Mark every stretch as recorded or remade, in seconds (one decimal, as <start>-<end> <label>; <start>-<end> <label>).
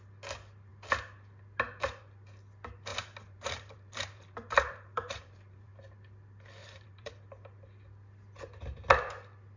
0.0-2.9 recorded; 2.9-5.7 remade; 5.7-6.6 recorded; 6.6-7.1 remade; 7.1-9.6 recorded